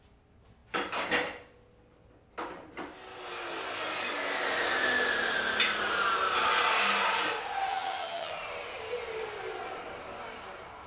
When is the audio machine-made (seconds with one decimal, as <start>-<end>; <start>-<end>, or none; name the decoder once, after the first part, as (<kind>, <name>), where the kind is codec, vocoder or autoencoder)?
7.7-8.3 (vocoder, HiFi-GAN)